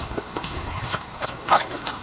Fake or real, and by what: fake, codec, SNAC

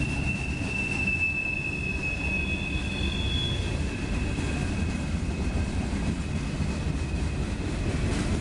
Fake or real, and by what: real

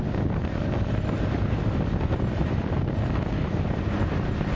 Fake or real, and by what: real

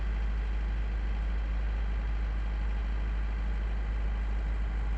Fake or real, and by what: real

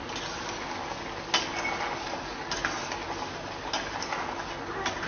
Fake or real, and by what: real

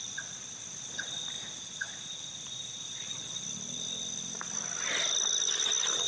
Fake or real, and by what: real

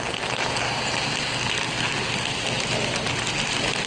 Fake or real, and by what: real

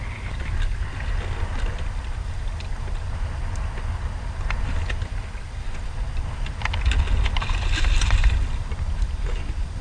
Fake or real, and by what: real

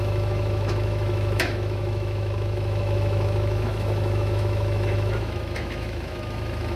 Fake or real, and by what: fake, autoencoder, DAC-VAE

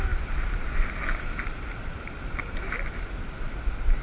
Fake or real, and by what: real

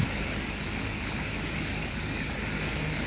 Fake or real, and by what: fake, codec, DAC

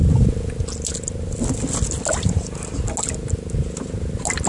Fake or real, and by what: real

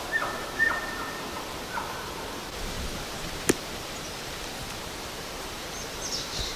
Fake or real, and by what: fake, vocoder, BigVGAN v2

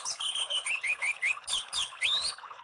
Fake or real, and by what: fake, codec, HILCodec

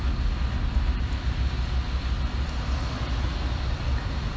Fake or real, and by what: real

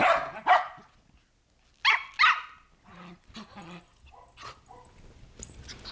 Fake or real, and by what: real